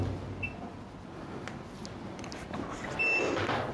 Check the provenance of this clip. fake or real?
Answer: real